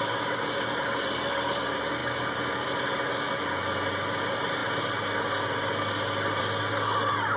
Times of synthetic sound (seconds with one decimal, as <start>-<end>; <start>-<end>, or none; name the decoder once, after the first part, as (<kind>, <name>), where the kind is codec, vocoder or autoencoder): none